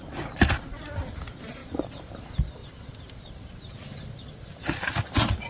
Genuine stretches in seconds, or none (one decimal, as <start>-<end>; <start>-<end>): 0.0-5.5